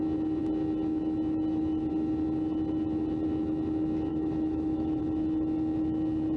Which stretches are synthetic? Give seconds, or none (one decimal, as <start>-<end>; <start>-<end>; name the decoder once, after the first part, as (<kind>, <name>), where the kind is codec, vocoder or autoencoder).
4.1-5.0 (autoencoder, DAC-VAE)

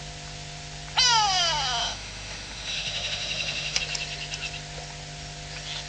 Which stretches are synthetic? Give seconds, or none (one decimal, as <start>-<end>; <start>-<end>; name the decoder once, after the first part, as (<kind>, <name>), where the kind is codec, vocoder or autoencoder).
1.8-3.8 (autoencoder, DAC-VAE)

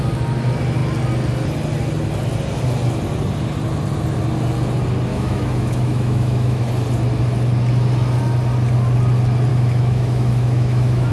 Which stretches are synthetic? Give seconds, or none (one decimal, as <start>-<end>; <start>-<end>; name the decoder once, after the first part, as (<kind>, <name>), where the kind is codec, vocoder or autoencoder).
5.1-6.7 (autoencoder, DAC-VAE); 9.5-11.1

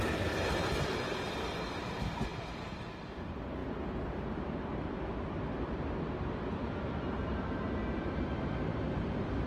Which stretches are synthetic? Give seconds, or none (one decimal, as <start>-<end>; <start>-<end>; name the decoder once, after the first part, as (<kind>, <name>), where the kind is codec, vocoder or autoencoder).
none

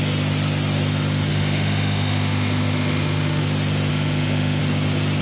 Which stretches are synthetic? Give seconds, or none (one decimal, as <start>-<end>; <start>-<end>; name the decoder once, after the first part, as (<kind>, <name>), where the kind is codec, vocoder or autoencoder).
1.3-3.4 (autoencoder, DAC-VAE); 3.9-4.6

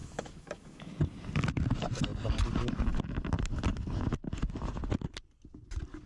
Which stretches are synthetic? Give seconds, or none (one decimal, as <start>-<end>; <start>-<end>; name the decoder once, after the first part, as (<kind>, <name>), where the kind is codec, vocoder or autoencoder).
0.0-0.9 (autoencoder, DAC-VAE)

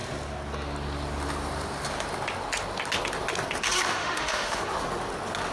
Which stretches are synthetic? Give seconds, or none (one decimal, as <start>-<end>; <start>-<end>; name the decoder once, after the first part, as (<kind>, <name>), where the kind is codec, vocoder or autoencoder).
4.0-4.6 (autoencoder, DAC-VAE)